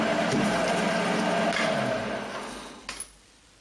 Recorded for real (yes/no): yes